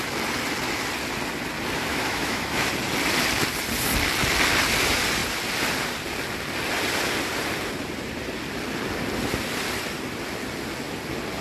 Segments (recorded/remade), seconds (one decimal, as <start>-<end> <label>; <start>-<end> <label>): 0.0-1.9 recorded; 1.9-2.7 remade; 2.7-11.4 recorded